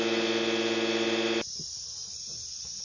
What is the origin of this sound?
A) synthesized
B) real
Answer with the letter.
B